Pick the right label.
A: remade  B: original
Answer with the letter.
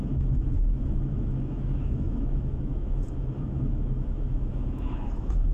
A